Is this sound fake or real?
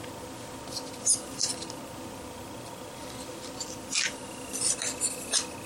real